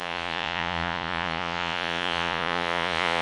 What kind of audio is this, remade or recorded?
remade